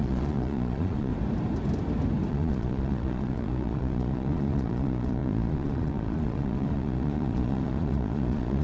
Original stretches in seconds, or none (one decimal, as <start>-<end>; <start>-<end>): 1.1-2.3